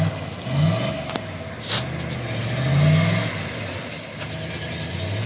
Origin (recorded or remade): recorded